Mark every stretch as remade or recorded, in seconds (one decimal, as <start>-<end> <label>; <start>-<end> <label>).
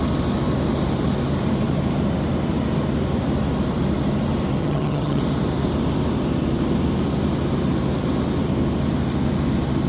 0.0-4.6 recorded; 4.6-5.2 remade; 5.2-9.9 recorded